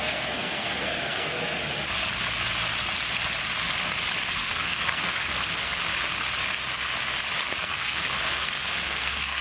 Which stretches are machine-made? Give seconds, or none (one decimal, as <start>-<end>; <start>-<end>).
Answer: 0.0-1.6; 4.3-5.8; 7.6-9.4